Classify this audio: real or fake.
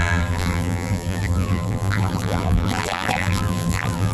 fake